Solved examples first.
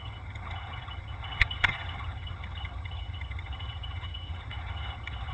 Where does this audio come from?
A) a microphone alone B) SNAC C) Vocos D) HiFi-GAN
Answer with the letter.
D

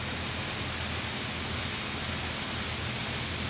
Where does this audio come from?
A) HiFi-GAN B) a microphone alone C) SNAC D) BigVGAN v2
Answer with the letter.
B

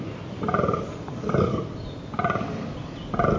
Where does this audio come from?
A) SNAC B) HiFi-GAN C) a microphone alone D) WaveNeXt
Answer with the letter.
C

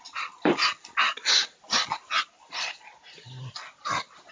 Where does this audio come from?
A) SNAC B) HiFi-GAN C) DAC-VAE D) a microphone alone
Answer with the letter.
D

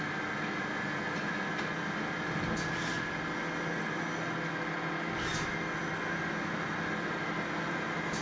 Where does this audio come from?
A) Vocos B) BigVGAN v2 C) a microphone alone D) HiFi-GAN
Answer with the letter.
C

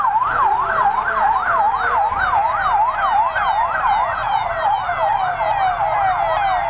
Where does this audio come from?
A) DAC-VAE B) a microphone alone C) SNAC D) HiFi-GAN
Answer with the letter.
B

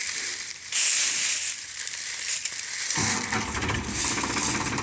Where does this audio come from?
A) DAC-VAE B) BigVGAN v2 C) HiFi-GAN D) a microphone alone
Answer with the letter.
D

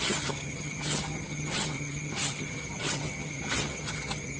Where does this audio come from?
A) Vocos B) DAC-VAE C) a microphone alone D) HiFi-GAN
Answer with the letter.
D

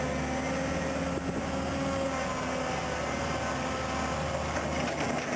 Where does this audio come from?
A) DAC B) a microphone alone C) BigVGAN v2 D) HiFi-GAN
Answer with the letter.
B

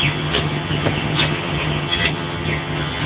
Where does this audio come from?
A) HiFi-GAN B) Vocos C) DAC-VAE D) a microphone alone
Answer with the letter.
A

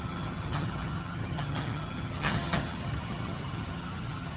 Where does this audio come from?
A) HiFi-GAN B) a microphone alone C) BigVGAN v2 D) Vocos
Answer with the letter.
A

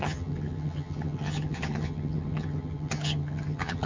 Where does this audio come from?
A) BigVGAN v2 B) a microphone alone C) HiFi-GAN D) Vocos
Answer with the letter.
C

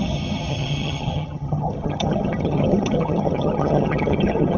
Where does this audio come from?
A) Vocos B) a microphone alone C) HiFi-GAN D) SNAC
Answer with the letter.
C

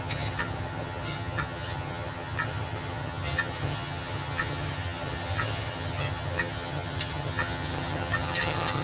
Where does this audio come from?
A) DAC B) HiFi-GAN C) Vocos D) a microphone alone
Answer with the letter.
B